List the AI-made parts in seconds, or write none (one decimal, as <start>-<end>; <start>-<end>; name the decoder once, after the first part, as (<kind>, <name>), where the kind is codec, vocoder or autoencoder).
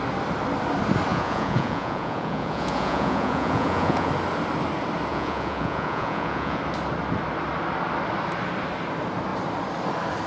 1.1-4.1 (vocoder, Vocos); 5.1-6.6